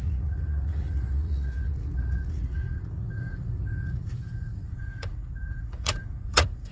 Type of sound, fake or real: fake